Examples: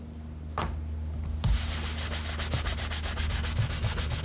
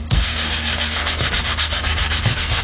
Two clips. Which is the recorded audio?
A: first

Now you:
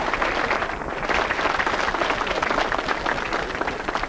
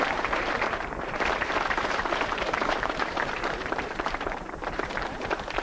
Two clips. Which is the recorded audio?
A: first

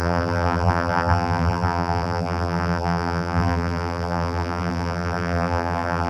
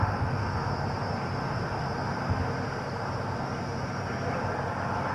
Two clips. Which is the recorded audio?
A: second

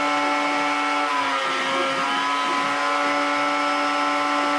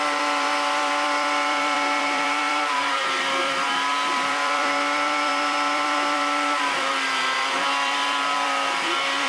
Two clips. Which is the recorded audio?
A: first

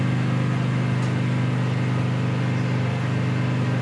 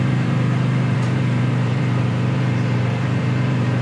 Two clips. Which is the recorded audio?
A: first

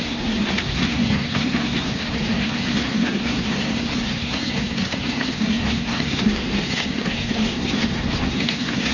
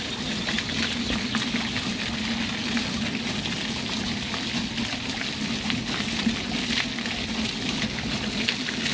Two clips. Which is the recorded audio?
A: second